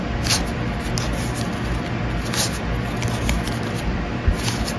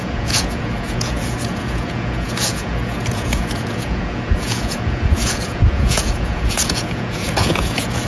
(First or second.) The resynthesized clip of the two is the second